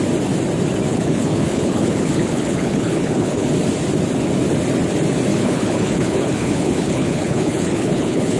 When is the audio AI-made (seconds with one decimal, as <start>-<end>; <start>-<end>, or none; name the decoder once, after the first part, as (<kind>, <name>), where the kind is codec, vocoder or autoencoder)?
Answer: 0.9-3.5 (codec, HILCodec); 5.3-8.4